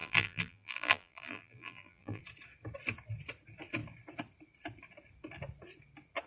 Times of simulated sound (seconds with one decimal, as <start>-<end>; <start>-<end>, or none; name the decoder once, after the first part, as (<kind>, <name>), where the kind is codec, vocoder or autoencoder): 0.0-2.2 (vocoder, BigVGAN v2)